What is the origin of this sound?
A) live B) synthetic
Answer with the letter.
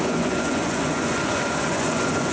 B